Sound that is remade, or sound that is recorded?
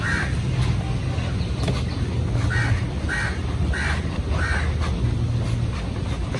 recorded